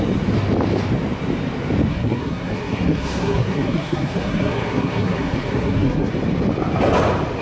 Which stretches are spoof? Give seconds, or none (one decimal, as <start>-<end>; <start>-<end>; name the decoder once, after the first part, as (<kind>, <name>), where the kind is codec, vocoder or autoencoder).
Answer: 1.9-6.1 (codec, SNAC)